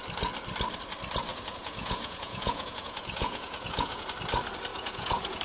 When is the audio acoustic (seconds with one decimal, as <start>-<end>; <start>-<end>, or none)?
0.0-1.3; 4.0-4.7